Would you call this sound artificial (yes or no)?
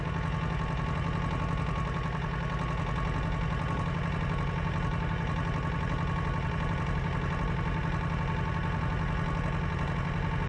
no